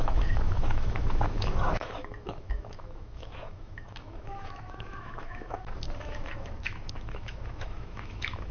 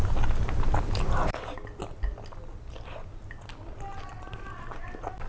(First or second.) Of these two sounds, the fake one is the first